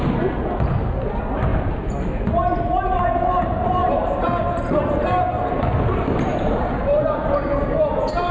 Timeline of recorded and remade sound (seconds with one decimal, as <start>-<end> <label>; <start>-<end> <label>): 0.0-3.8 recorded; 3.8-4.9 remade; 4.9-6.3 recorded; 6.3-7.0 remade; 7.0-8.3 recorded